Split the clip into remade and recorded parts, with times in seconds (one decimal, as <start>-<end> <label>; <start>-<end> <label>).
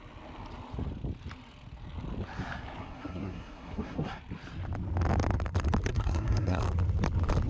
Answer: 0.0-2.8 recorded; 2.8-4.2 remade; 4.2-5.9 recorded; 5.9-6.6 remade; 6.6-7.5 recorded